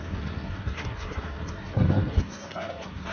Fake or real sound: fake